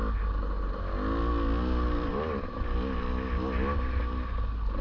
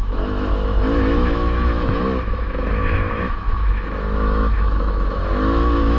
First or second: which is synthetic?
second